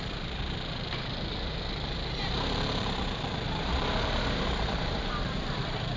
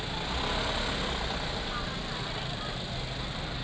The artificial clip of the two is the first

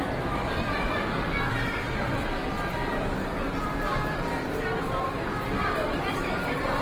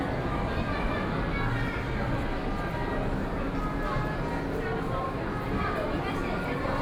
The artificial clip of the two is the first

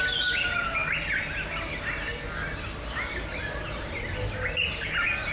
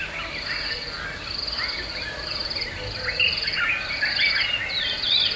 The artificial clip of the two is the second